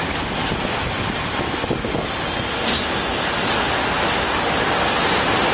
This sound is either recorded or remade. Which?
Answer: recorded